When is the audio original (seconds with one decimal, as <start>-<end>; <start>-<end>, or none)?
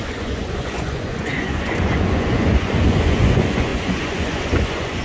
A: none